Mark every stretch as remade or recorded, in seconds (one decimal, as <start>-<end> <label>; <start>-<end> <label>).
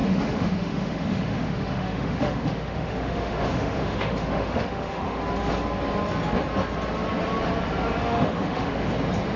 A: 0.0-5.2 remade; 5.2-8.0 recorded; 8.0-8.9 remade; 8.9-9.4 recorded